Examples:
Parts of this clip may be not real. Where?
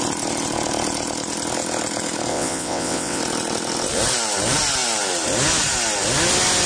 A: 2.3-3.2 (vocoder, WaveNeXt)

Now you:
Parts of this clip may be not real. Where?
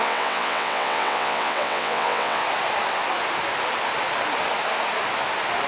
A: 0.0-2.4 (vocoder, WaveNeXt)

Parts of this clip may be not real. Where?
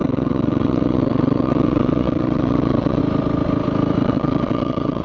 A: 0.0-3.0 (vocoder, WaveNeXt); 4.0-5.0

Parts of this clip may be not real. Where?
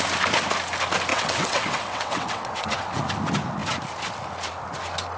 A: 1.1-2.9 (vocoder, WaveNeXt)